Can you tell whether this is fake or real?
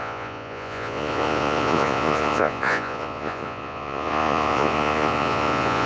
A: fake